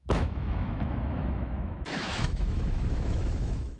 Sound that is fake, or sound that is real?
fake